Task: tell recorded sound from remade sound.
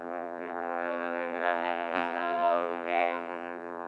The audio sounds remade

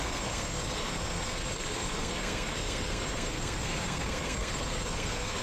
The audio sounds remade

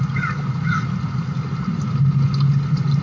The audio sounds recorded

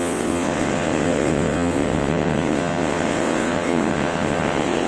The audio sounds remade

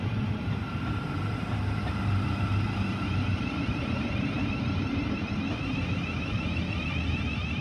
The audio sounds remade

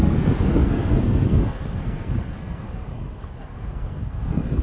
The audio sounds remade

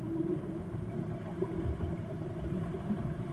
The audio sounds remade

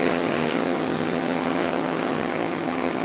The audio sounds remade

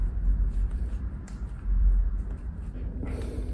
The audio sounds remade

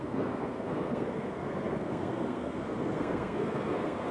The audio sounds remade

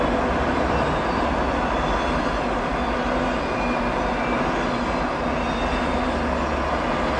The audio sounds recorded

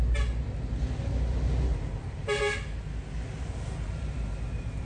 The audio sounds recorded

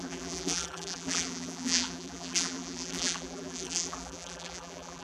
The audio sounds remade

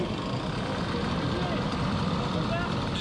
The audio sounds recorded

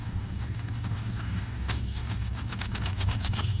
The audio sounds remade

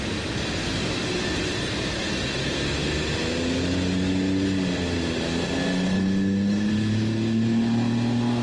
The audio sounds recorded